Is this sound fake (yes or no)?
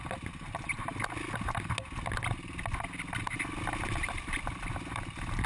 no